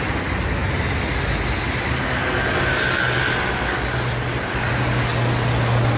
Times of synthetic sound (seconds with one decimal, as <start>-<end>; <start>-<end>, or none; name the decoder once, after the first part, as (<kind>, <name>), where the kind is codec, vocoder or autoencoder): none